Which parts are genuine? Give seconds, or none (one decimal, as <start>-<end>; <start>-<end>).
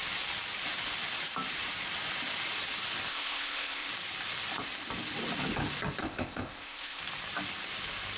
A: 0.0-3.1; 3.9-6.0; 7.0-8.2